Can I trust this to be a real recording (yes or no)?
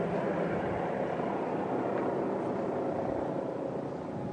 yes